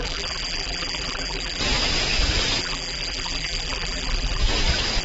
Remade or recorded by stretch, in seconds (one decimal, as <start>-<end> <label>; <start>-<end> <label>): 0.0-1.6 remade; 1.6-2.6 recorded; 2.6-4.4 remade; 4.4-5.0 recorded